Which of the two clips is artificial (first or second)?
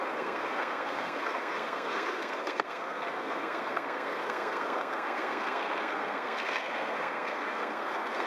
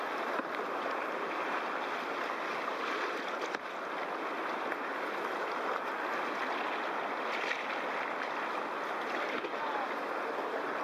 first